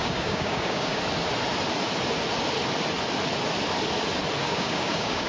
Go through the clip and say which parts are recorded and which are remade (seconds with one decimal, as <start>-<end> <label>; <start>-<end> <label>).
0.0-1.0 remade; 1.0-4.4 recorded; 4.4-5.3 remade